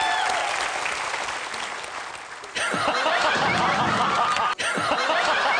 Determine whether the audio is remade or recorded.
recorded